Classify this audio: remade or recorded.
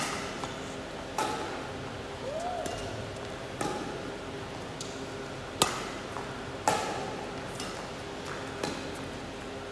recorded